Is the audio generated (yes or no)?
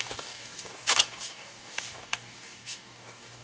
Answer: yes